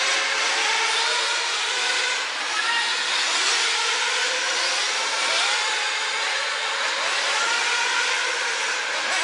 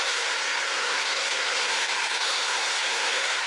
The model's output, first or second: second